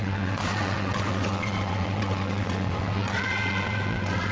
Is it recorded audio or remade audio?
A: remade